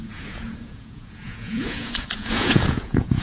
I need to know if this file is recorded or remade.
remade